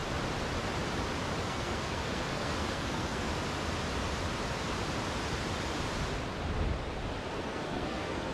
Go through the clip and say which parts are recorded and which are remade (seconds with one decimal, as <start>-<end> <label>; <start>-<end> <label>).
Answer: 0.0-1.4 recorded; 1.4-3.3 remade; 3.3-7.3 recorded; 7.3-8.3 remade